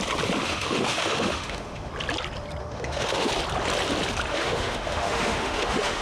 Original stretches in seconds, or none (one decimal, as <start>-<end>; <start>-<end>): 0.0-0.4; 1.9-2.6; 3.3-4.3